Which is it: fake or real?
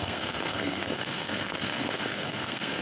fake